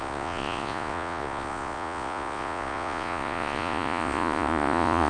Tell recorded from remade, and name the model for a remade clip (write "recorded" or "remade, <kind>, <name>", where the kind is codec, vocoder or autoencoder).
remade, vocoder, Vocos